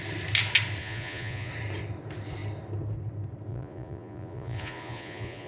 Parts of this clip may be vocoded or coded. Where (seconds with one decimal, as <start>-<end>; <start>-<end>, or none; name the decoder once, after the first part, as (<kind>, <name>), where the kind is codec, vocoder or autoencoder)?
0.8-1.5 (vocoder, Vocos); 3.5-5.5